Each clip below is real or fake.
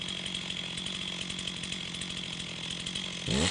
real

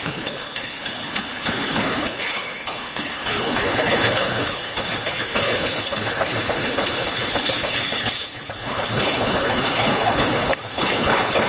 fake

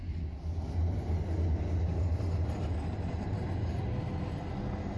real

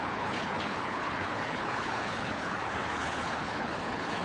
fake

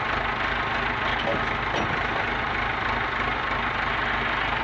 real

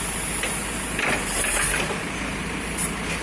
real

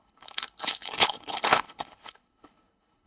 fake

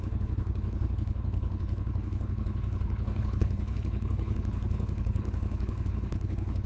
fake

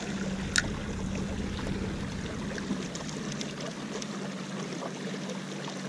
real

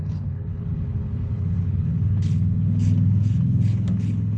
fake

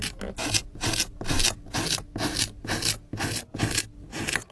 real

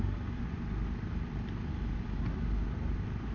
real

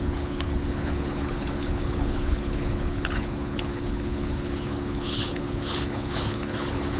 fake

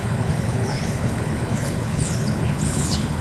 fake